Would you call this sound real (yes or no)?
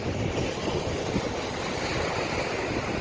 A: yes